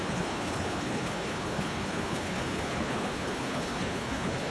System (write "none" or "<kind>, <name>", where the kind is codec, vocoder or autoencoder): codec, HILCodec